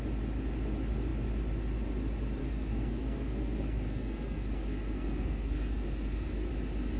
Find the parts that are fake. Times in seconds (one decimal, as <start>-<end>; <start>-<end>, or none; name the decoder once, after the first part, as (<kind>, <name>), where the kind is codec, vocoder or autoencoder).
2.4-6.5 (codec, SNAC)